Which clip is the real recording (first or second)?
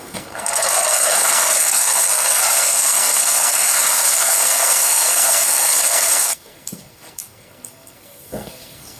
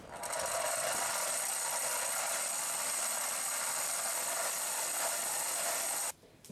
second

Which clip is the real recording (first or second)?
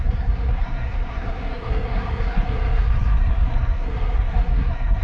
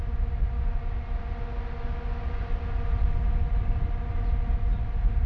second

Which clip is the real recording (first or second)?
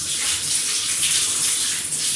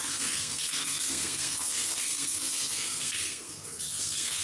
first